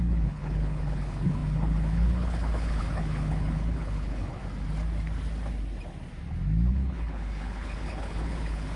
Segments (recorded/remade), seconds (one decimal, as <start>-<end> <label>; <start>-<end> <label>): 0.0-4.4 remade; 4.4-6.7 recorded; 6.7-8.8 remade

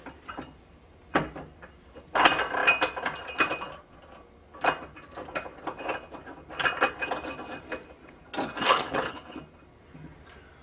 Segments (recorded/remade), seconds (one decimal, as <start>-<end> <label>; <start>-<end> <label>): 0.0-8.6 recorded; 8.6-9.4 remade; 9.4-10.6 recorded

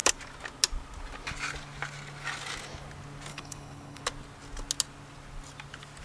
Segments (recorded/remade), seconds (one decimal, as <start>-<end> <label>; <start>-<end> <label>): 0.0-3.3 recorded; 3.3-4.0 remade; 4.0-6.0 recorded